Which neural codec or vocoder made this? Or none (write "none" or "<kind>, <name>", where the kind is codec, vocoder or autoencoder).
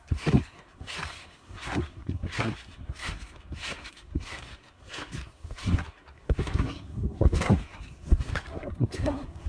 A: codec, SNAC